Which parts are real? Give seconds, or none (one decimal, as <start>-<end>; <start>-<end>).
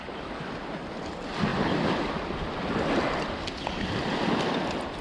0.0-5.0